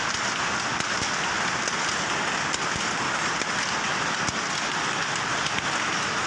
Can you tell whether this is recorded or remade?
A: recorded